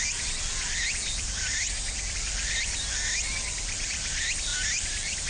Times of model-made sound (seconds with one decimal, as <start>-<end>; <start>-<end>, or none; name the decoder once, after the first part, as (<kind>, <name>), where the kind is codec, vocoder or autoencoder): 4.5-5.3 (vocoder, BigVGAN v2)